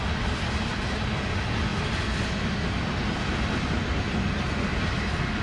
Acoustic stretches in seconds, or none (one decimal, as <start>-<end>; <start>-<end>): 0.0-5.4